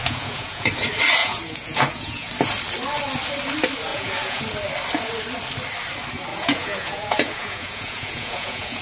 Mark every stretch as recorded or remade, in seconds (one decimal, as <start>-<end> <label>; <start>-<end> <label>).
0.0-0.7 remade; 0.7-1.2 recorded; 1.2-2.3 remade; 2.3-3.9 recorded; 3.9-4.4 remade; 4.4-6.3 recorded; 6.3-8.8 remade